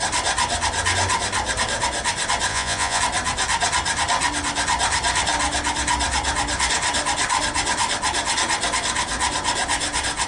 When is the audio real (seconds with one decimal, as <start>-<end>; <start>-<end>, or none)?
0.0-2.5; 3.0-10.3